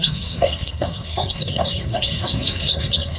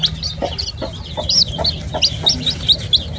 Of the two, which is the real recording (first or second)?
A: second